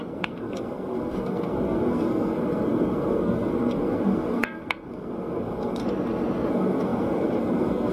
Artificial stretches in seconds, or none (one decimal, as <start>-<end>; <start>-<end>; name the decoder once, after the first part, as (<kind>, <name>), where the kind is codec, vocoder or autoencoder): 0.0-5.8 (codec, SNAC); 6.5-7.9